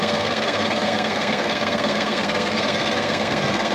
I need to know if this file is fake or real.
fake